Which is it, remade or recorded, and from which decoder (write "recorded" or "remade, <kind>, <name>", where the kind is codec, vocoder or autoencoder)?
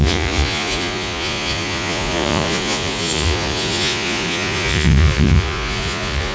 remade, vocoder, Vocos